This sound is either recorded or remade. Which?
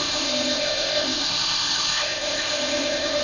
remade